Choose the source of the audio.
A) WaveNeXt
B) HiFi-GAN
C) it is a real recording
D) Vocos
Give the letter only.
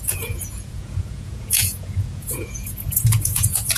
D